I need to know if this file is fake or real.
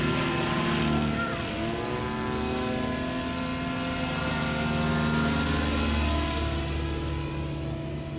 real